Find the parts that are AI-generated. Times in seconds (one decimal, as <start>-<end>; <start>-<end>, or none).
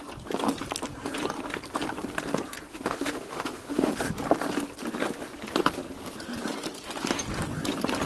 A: 2.7-3.9